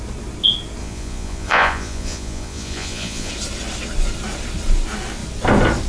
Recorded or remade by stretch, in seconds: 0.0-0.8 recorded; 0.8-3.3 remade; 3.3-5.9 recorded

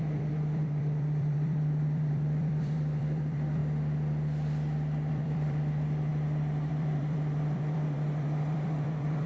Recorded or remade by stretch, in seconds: 0.0-3.6 remade; 3.6-5.1 recorded; 5.1-6.1 remade; 6.1-6.7 recorded; 6.7-9.3 remade

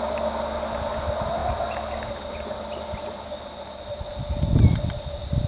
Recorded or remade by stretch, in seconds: 0.0-5.5 recorded

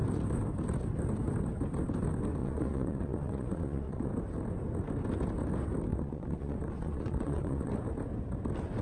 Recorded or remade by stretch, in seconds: 0.0-2.4 recorded; 2.4-4.1 remade; 4.1-5.9 recorded; 5.9-7.7 remade; 7.7-8.8 recorded